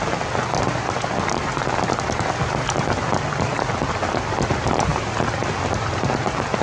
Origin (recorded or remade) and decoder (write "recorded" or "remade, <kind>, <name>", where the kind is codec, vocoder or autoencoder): recorded